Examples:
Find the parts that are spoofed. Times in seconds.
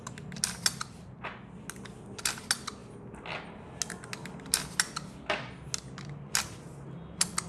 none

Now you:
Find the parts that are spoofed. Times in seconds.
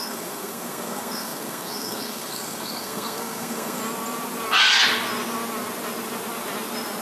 0.0-3.8 (codec, SNAC)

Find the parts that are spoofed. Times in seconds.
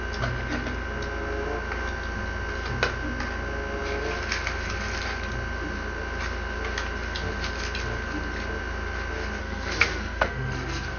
9.4-11.0 (codec, SNAC)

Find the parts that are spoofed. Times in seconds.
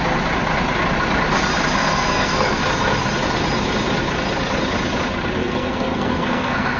1.8-2.6 (codec, SNAC); 5.4-6.8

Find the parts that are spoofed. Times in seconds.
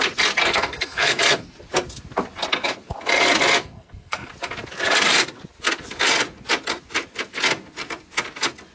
0.5-1.2 (codec, SNAC); 3.6-4.3